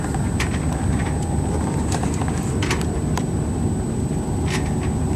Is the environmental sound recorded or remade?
recorded